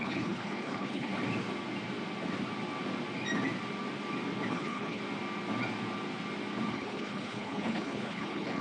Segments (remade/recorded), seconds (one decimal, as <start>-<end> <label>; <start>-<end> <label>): 0.0-1.1 remade; 1.1-4.5 recorded; 4.5-5.0 remade; 5.0-6.7 recorded; 6.7-8.6 remade